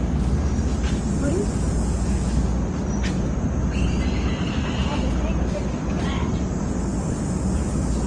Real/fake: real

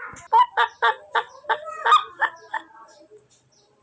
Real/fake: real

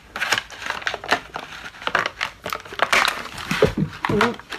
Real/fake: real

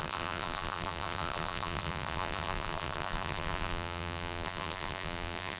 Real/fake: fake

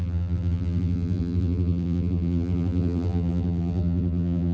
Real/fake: fake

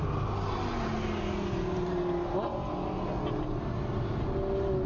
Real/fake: real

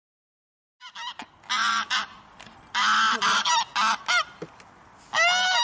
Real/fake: real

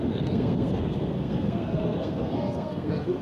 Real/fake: fake